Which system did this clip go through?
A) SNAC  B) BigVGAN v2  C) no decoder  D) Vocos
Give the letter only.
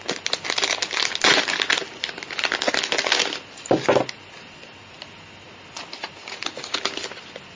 C